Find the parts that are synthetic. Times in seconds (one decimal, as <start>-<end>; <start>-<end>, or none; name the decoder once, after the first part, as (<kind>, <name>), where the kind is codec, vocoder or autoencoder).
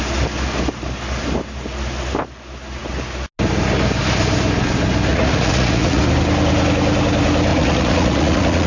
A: 5.1-6.0 (vocoder, Vocos); 7.5-8.7